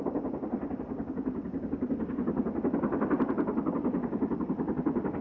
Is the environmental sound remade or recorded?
recorded